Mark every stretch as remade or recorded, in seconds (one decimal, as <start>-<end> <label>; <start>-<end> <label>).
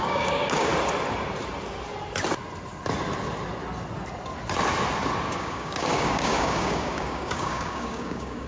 0.0-0.7 remade; 0.7-5.3 recorded; 5.3-8.5 remade